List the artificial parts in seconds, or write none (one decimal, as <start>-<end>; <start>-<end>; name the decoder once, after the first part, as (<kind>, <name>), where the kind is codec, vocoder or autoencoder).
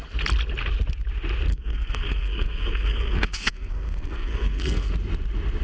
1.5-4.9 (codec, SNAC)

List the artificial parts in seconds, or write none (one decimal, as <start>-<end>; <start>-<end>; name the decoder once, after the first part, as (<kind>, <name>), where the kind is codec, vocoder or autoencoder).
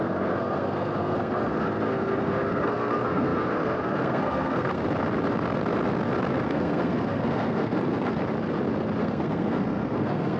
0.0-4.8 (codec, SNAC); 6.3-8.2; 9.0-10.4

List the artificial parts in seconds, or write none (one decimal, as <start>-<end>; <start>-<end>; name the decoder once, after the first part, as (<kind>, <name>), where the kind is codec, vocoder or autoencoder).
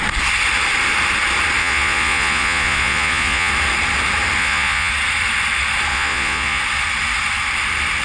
1.6-3.5 (vocoder, Vocos); 4.4-4.9; 5.9-6.6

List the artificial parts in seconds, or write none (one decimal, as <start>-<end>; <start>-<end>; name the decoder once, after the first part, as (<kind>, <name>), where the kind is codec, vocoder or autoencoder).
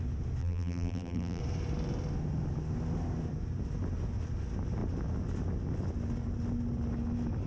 0.4-1.4 (vocoder, BigVGAN v2)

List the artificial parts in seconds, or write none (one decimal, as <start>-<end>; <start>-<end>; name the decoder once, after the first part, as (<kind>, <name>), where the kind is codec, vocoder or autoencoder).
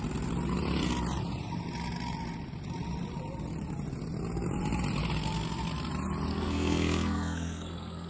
6.3-8.1 (codec, SNAC)